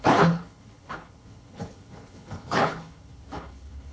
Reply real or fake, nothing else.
fake